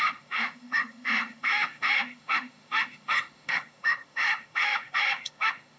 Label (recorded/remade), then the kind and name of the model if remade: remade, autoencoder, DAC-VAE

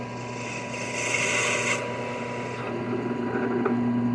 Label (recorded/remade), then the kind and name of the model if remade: recorded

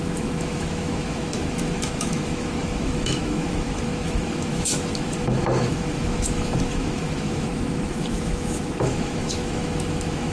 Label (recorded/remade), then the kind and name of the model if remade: remade, autoencoder, DAC-VAE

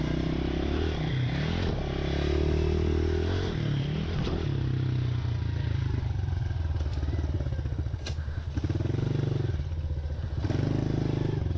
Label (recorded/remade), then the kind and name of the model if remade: recorded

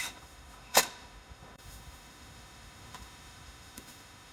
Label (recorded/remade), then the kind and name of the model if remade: remade, autoencoder, DAC-VAE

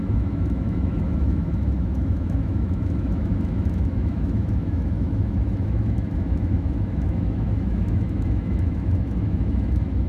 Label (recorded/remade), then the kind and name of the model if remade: remade, autoencoder, DAC-VAE